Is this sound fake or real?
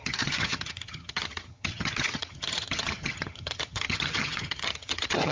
fake